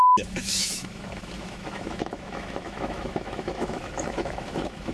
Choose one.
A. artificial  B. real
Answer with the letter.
A